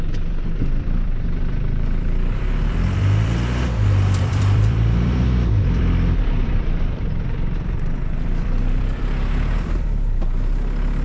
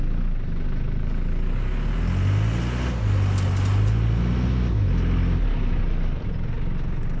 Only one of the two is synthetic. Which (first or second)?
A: first